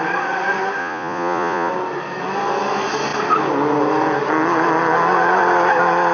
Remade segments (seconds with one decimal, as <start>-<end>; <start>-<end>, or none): 0.8-1.7